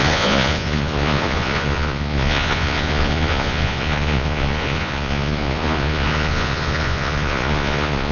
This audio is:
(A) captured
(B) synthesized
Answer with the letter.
B